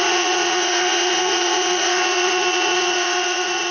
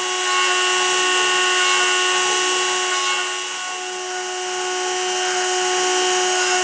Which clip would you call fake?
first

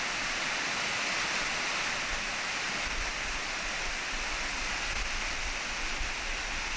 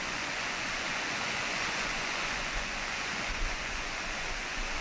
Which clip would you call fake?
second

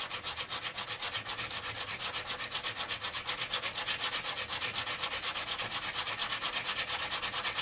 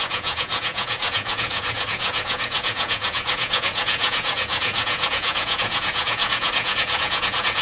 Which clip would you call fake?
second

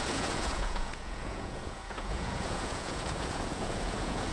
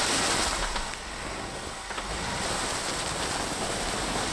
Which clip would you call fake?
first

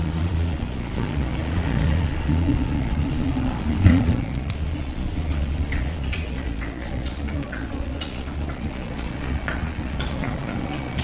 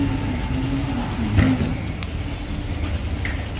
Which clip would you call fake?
first